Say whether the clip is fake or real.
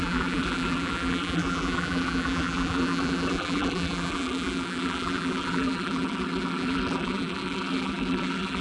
fake